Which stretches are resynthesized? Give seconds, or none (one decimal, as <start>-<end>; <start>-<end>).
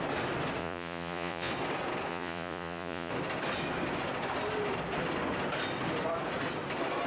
0.6-1.5; 2.1-3.1